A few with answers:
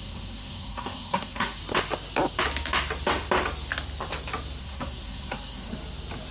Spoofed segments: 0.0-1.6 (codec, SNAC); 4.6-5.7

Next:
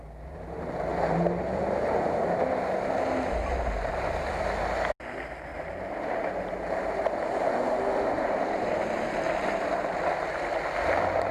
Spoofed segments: 0.9-2.0 (vocoder, BigVGAN v2); 5.5-9.1

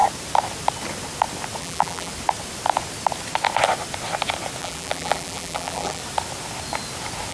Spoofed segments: 1.6-2.1 (vocoder, BigVGAN v2); 4.6-6.0

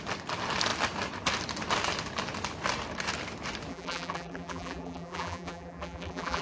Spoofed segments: 3.7-6.4 (vocoder, BigVGAN v2)

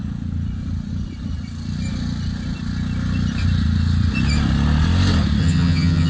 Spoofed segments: 5.4-6.1 (vocoder, HiFi-GAN)

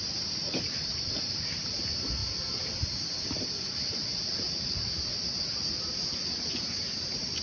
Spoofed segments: none